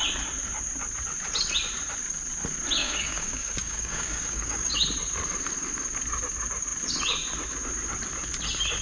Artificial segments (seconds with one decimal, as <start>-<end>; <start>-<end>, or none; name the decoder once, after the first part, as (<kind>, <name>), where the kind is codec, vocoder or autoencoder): 2.8-4.7 (codec, DAC)